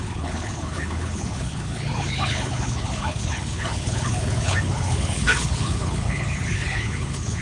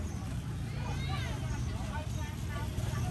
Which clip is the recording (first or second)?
second